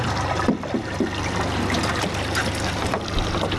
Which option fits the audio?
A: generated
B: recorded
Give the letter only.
B